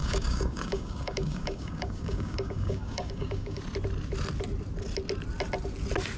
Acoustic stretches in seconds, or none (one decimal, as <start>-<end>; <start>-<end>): 3.6-6.2